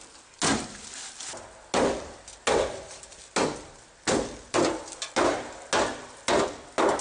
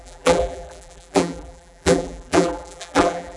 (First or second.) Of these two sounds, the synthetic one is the second